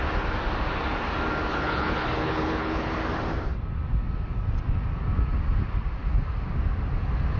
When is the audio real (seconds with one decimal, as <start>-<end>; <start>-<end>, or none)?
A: 0.0-1.5; 2.9-7.4